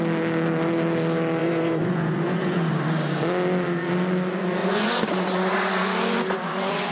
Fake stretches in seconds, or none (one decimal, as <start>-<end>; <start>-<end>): 1.4-2.7; 4.6-6.9